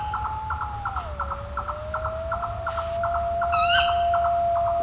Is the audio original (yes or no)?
yes